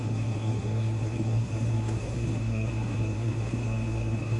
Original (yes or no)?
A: no